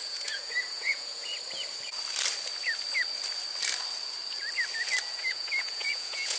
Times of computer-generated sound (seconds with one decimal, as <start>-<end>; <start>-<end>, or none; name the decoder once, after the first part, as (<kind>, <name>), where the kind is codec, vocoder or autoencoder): 0.0-1.3 (vocoder, Vocos); 5.0-6.4